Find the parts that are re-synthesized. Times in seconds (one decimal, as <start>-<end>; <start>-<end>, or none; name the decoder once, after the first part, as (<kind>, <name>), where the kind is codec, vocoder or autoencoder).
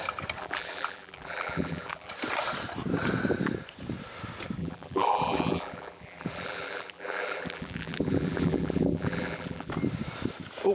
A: 0.4-2.1 (vocoder, BigVGAN v2); 4.6-9.7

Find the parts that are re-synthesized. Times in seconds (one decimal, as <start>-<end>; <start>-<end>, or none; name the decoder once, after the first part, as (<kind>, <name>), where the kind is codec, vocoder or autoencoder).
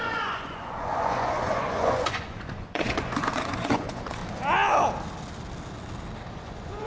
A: 0.0-4.2 (vocoder, Vocos); 6.3-6.9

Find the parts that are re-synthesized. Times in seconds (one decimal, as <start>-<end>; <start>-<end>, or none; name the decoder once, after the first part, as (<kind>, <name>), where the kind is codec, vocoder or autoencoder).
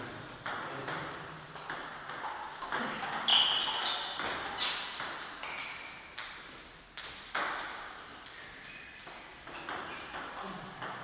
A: 0.0-1.9 (vocoder, BigVGAN v2); 2.5-3.3; 7.3-11.0